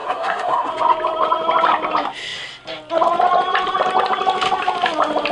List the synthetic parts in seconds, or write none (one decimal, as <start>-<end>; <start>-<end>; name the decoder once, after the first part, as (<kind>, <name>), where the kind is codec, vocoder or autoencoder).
0.0-0.7 (codec, SNAC)